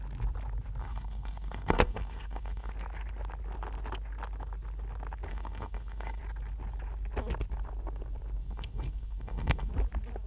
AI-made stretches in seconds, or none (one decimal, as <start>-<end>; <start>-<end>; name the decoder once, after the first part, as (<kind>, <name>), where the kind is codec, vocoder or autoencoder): 0.8-2.7 (codec, SNAC); 5.3-6.2; 8.4-9.7

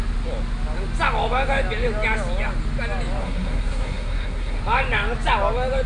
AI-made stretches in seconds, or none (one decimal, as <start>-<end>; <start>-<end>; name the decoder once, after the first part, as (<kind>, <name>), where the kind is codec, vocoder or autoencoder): 3.2-4.6 (codec, SNAC)

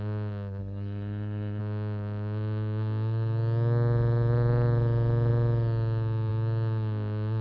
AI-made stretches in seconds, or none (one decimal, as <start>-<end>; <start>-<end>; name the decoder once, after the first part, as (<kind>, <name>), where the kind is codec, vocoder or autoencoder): 0.6-1.6 (codec, SNAC)

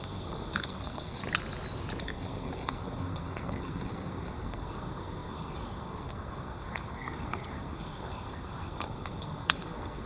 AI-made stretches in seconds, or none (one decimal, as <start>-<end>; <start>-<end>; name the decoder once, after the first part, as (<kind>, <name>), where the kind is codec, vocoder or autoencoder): 0.0-1.2 (codec, SNAC); 2.0-10.1

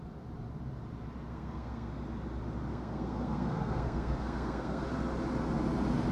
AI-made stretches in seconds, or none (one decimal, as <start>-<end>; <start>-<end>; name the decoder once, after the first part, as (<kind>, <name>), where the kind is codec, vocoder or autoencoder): 1.3-1.9 (codec, SNAC); 2.7-4.8

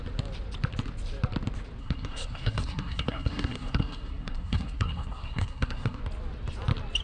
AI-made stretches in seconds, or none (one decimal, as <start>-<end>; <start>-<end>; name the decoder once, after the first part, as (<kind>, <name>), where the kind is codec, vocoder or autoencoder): 1.8-6.0 (codec, SNAC)